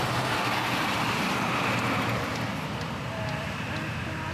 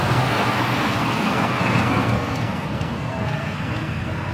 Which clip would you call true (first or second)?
first